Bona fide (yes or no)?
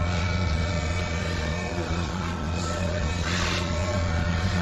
no